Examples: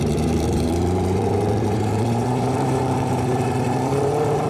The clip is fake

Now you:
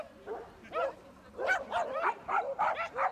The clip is real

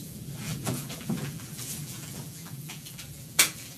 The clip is fake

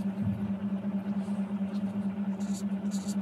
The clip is real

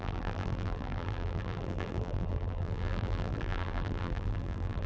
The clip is fake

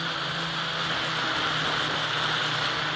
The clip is real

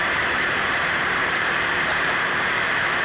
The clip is fake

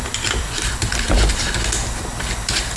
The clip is fake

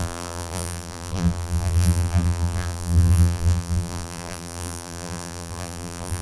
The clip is fake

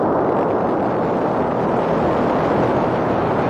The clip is real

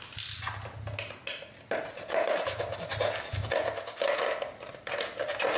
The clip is real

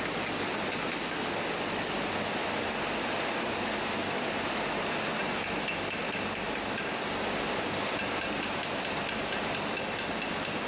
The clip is real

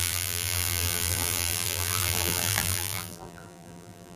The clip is fake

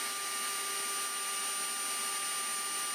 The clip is real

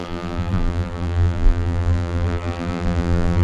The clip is fake